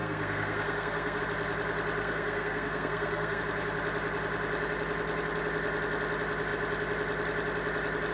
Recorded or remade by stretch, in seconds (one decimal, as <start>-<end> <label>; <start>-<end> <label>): 0.0-1.2 remade; 1.2-2.0 recorded; 2.0-3.4 remade; 3.4-8.1 recorded